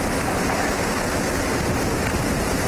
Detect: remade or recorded recorded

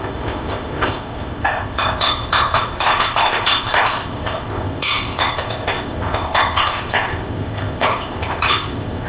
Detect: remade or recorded remade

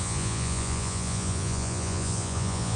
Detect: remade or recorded remade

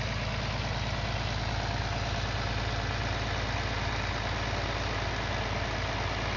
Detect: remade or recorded recorded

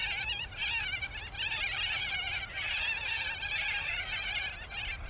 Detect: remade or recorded recorded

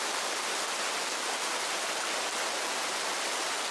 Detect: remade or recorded recorded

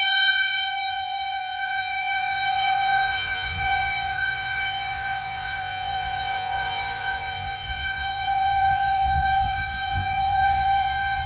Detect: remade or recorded remade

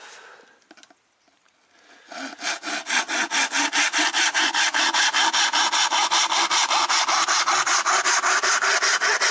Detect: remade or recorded recorded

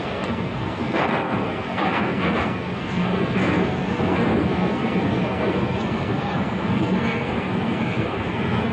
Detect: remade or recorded remade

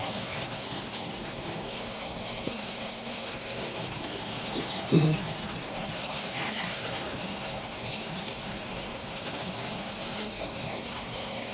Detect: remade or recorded remade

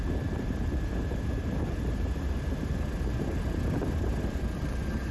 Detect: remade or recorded remade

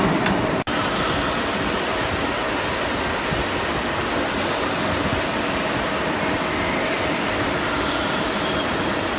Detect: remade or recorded recorded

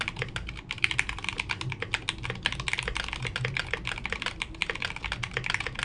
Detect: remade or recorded recorded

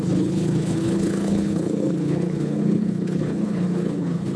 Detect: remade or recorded remade